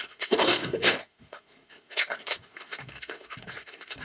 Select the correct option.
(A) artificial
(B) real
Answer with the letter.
A